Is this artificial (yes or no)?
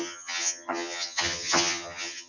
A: yes